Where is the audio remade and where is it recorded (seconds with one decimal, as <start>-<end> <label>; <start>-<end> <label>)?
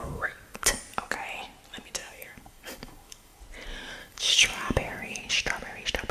0.0-0.8 remade; 0.8-2.0 recorded; 2.0-3.4 remade; 3.4-4.0 recorded; 4.0-5.2 remade; 5.2-6.1 recorded